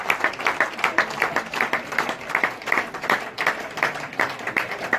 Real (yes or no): no